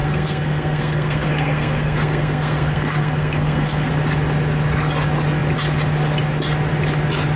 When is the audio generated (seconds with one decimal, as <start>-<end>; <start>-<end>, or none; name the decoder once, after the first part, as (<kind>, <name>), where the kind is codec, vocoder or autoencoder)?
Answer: 0.0-3.9 (codec, SNAC)